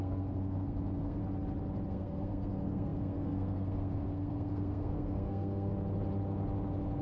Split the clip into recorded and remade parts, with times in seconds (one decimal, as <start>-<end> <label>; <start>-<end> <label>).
0.0-1.2 remade; 1.2-1.9 recorded; 1.9-5.7 remade; 5.7-7.0 recorded